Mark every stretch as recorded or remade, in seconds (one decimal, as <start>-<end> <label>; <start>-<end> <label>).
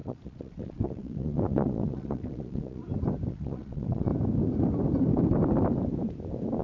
0.0-2.8 remade; 2.8-3.3 recorded; 3.3-4.1 remade; 4.1-6.6 recorded